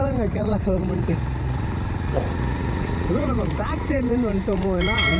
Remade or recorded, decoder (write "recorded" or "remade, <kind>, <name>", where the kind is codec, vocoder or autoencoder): remade, vocoder, Vocos